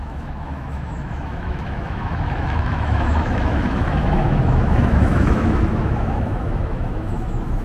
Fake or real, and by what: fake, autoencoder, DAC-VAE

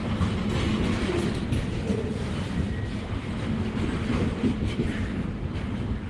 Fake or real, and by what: real